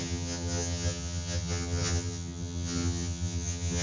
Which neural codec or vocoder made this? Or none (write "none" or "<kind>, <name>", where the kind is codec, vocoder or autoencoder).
vocoder, HiFi-GAN